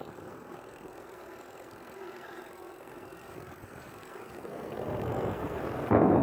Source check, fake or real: fake